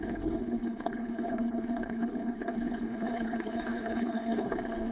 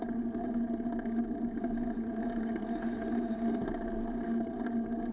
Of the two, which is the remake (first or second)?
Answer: first